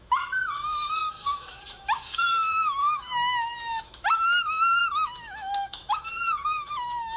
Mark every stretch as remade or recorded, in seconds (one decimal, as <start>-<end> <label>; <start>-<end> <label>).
0.0-7.2 remade